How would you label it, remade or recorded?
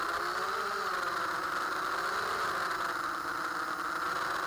recorded